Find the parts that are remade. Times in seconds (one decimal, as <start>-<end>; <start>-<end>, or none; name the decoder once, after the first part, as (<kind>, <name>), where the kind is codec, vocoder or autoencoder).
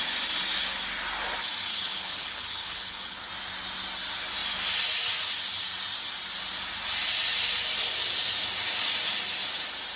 1.7-3.3 (codec, HILCodec)